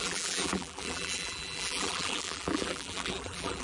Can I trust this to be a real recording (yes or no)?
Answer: no